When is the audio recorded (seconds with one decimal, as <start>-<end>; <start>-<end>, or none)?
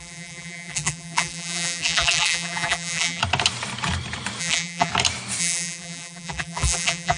3.2-4.4; 4.9-5.4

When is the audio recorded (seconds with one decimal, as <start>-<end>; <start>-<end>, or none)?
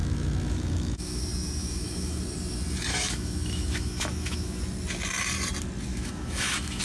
1.2-1.6; 2.2-2.9; 4.6-5.9